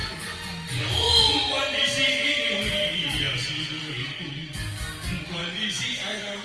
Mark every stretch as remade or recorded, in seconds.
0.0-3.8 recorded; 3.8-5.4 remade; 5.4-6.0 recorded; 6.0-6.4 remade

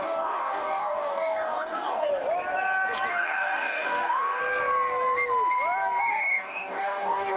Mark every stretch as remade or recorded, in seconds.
0.0-2.1 remade; 2.1-3.1 recorded; 3.1-4.4 remade; 4.4-6.0 recorded; 6.0-7.4 remade

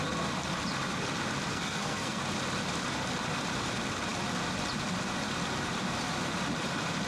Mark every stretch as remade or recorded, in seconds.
0.0-1.5 recorded; 1.5-2.2 remade; 2.2-7.1 recorded

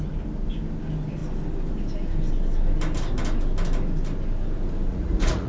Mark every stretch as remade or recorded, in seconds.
0.0-4.9 recorded; 4.9-5.5 remade

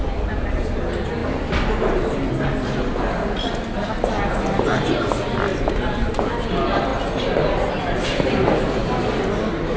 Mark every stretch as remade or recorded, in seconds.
0.0-5.5 recorded; 5.5-6.1 remade; 6.1-9.8 recorded

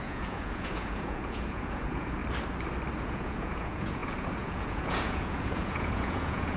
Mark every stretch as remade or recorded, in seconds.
0.0-2.2 remade; 2.2-3.0 recorded; 3.0-6.6 remade

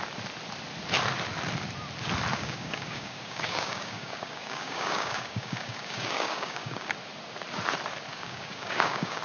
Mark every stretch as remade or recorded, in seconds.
0.0-2.3 recorded; 2.3-6.9 remade; 6.9-8.1 recorded; 8.1-9.2 remade